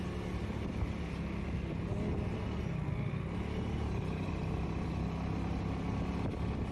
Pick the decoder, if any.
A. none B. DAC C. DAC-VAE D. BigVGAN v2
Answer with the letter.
A